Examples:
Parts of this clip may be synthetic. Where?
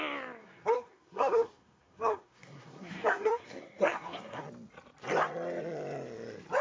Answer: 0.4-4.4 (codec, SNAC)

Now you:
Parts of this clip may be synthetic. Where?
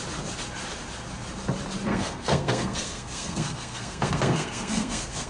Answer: 1.9-5.3 (codec, SNAC)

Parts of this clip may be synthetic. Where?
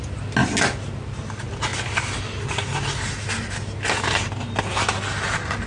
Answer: none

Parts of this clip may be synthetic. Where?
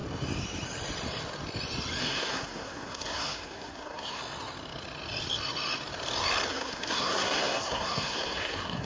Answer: 2.0-4.2 (codec, SNAC); 6.5-8.8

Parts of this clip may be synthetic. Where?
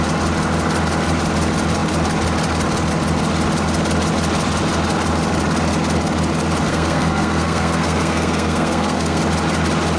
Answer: 6.7-9.2 (codec, SNAC)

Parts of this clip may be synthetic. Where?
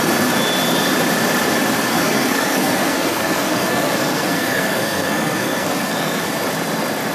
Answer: 1.9-6.2 (codec, SNAC)